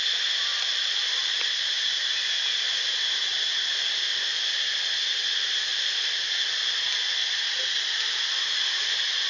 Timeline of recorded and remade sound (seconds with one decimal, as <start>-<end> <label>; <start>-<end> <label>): 0.0-0.5 recorded; 0.5-4.5 remade; 4.5-7.2 recorded; 7.2-7.7 remade; 7.7-9.3 recorded